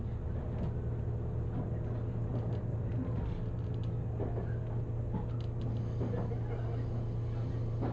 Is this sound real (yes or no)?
yes